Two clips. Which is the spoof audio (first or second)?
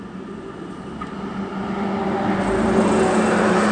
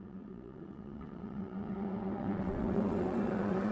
second